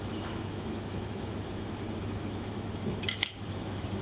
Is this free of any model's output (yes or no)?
no